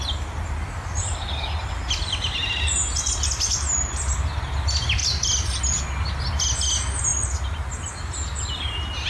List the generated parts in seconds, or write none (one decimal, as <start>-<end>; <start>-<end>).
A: none